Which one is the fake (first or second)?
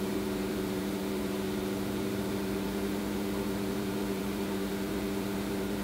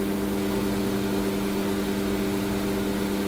first